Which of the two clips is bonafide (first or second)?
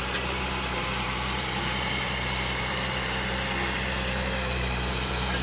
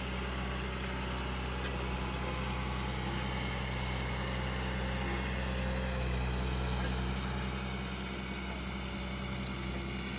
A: second